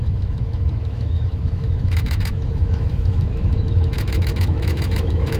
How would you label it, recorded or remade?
remade